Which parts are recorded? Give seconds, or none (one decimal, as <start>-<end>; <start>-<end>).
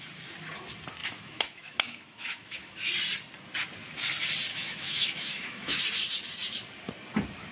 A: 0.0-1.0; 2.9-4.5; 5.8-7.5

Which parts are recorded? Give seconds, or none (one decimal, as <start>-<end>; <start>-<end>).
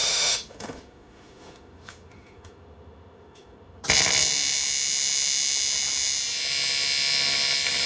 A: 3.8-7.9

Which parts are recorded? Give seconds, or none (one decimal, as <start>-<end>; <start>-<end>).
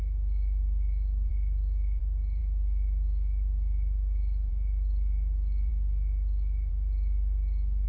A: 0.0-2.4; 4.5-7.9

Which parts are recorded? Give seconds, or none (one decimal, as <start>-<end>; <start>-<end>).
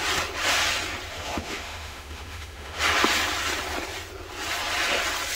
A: 0.0-1.1; 2.8-5.3